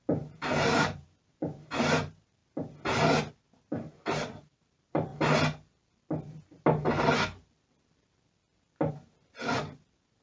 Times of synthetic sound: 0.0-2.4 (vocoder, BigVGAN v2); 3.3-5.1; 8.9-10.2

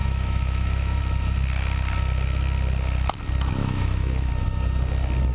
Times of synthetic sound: 0.0-1.0 (autoencoder, DAC-VAE); 3.6-4.3

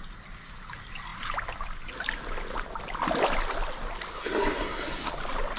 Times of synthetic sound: 4.1-5.1 (codec, SNAC)

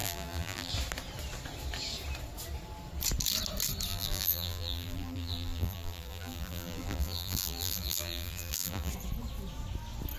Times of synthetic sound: 0.0-0.7 (vocoder, BigVGAN v2); 3.9-8.9

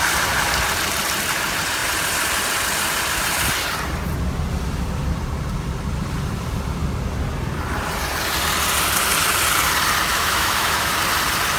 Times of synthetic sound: 10.1-10.9 (autoencoder, DAC-VAE)